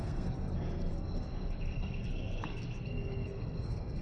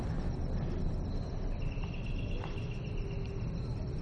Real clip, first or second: second